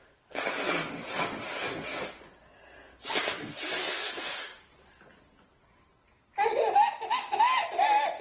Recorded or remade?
recorded